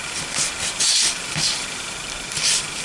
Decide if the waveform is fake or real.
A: fake